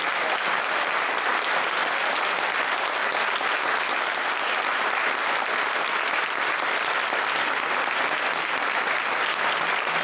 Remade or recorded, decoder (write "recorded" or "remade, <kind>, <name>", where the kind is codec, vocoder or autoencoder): recorded